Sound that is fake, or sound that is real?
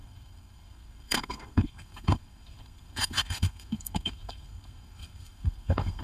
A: fake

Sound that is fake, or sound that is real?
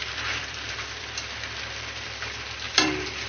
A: fake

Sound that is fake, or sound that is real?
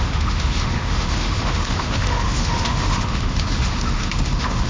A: fake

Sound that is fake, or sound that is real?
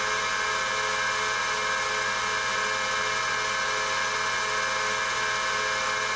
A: real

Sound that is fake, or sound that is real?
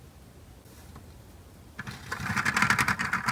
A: real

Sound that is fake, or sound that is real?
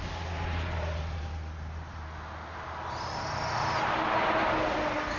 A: real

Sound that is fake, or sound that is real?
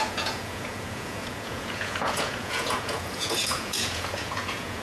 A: fake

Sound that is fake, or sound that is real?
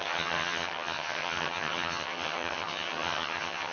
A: fake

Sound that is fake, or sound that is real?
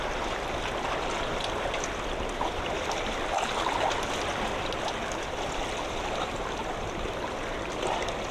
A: fake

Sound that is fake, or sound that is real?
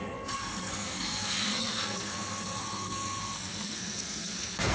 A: fake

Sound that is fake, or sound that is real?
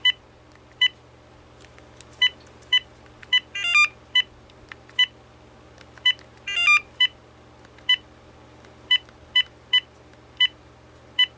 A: real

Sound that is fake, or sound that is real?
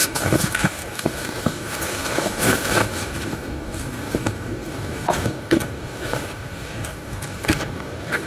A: fake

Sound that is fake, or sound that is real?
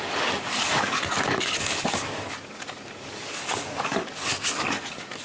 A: fake